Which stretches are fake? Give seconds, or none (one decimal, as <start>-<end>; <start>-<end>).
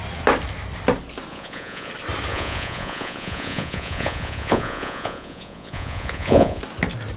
1.3-1.9; 2.3-6.6